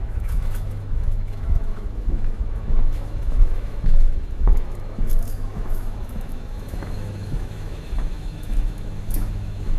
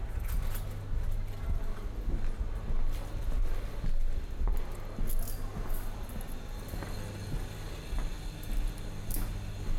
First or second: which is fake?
first